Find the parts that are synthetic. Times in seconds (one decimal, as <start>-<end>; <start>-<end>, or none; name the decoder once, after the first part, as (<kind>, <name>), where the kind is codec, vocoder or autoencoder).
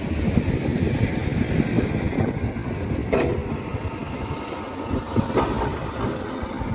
none